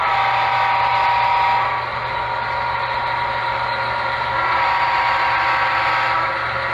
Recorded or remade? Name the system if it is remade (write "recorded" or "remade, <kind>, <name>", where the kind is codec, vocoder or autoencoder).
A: recorded